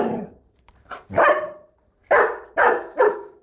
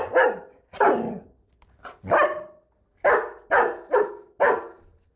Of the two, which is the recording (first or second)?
second